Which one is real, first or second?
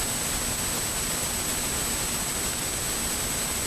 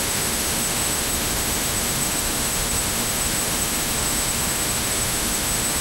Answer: first